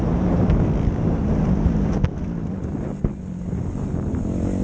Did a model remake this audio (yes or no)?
no